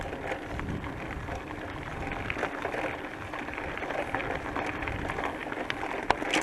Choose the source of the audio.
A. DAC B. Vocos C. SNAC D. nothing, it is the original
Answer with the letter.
D